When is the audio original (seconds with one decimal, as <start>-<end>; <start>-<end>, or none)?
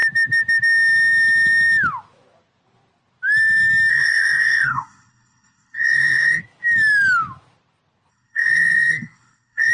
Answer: 0.0-3.9; 6.4-8.1